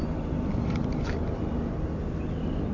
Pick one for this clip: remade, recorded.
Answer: recorded